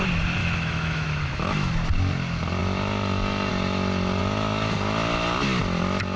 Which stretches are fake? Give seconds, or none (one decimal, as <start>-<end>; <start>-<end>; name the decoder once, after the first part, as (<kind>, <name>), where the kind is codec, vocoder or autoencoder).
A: 0.4-1.7 (autoencoder, DAC-VAE)